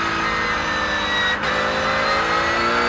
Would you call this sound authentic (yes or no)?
yes